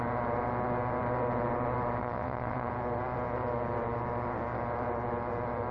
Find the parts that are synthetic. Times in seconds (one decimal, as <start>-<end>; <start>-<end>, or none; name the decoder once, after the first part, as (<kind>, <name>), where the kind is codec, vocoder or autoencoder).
2.0-2.7 (vocoder, WaveNeXt)

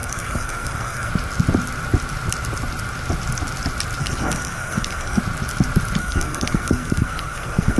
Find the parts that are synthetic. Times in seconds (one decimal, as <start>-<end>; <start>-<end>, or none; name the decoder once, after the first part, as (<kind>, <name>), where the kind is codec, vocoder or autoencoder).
0.0-1.1 (codec, SNAC); 4.0-5.2; 6.0-7.8